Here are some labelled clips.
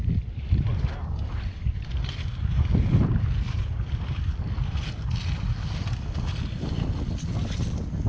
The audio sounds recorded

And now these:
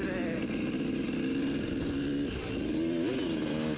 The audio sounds recorded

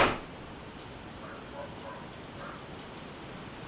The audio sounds recorded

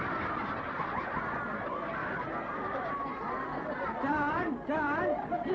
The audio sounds recorded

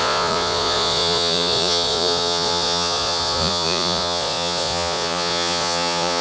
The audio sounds remade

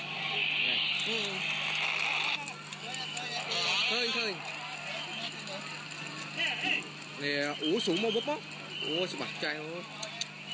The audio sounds recorded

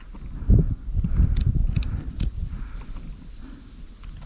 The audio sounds recorded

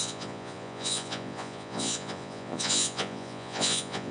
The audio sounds remade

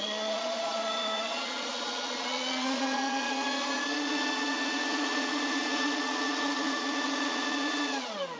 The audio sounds remade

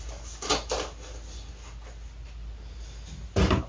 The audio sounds recorded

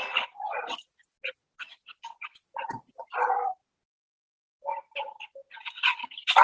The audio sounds recorded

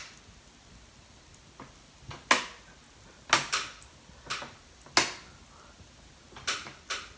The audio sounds recorded